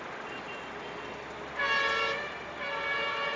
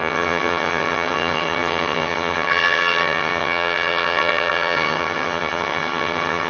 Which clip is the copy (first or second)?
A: second